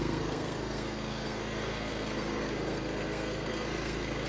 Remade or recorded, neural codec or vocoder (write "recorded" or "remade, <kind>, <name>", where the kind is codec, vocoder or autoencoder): remade, codec, SNAC